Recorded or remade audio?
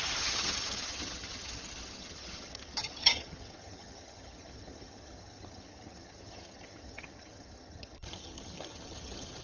remade